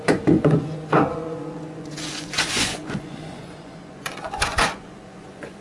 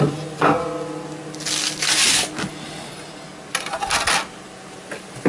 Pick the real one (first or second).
second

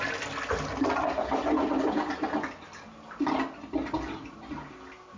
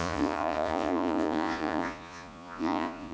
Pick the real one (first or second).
first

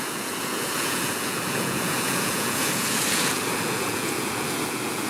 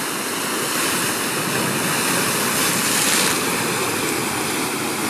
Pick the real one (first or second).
second